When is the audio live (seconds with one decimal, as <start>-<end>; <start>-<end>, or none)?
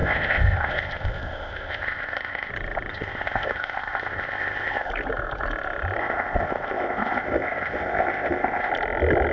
2.5-2.9; 4.9-6.0; 8.7-9.3